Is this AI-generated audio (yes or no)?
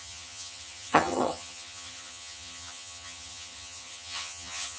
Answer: yes